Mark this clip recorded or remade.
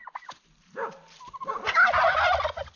recorded